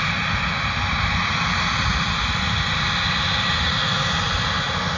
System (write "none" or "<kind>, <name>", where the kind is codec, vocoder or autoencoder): none